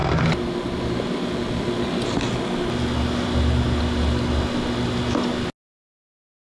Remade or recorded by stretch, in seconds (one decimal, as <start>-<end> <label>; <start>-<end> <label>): 0.0-6.4 recorded